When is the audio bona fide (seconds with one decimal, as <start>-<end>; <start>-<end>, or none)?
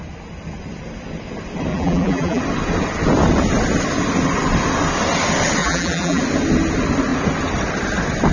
0.0-1.7; 2.4-5.6; 6.2-8.3